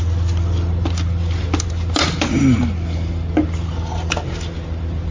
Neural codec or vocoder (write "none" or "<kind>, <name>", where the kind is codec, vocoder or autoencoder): none